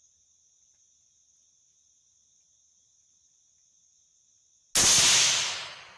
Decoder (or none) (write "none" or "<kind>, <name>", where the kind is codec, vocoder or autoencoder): none